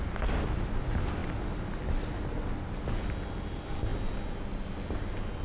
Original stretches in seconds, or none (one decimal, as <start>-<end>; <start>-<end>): 0.0-5.4